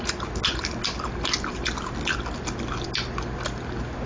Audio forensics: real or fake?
real